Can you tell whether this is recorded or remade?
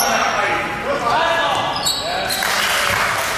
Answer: recorded